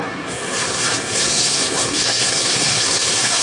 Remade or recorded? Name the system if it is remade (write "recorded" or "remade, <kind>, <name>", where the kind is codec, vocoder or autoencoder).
remade, codec, SNAC